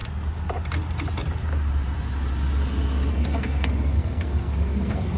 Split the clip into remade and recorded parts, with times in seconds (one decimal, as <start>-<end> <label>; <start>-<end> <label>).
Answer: 0.0-3.1 recorded; 3.1-5.2 remade